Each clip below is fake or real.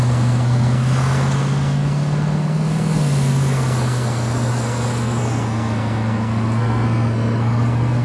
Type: fake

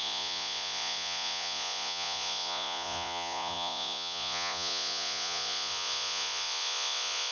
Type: fake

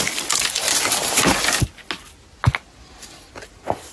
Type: real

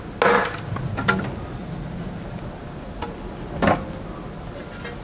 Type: real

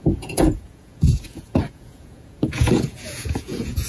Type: fake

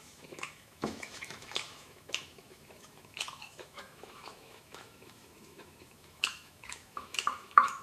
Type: fake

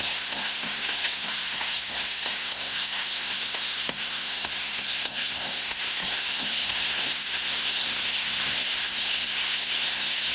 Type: fake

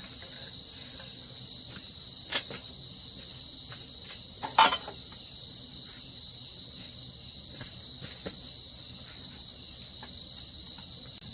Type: real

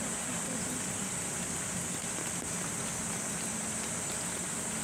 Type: real